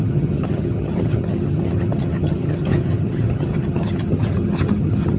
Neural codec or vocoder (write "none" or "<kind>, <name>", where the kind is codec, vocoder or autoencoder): vocoder, HiFi-GAN